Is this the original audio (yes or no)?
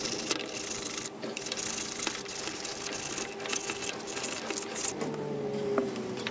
yes